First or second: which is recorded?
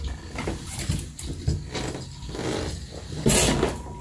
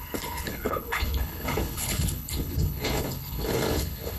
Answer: first